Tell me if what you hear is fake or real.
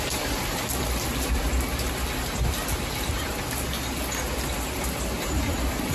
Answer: real